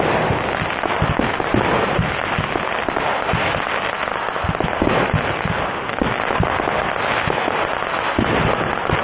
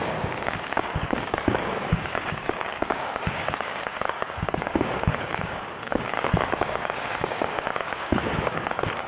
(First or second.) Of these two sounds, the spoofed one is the second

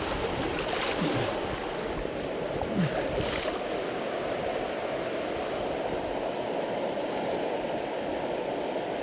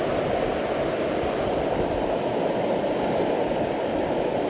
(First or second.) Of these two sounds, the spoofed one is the second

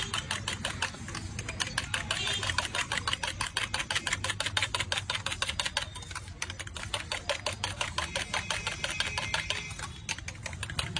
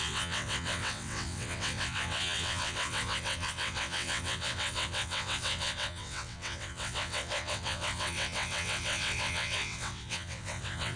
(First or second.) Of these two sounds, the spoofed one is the second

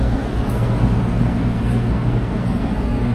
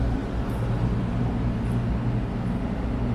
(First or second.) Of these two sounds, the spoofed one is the first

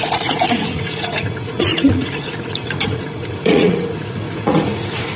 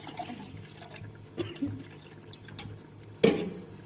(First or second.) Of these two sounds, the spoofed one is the first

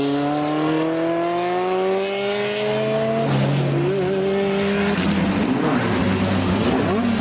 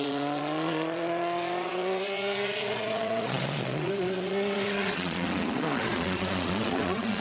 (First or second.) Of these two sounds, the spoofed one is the second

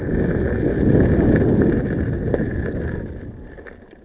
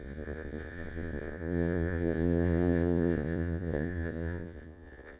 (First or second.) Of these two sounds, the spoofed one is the second